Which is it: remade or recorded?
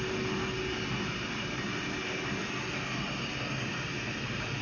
recorded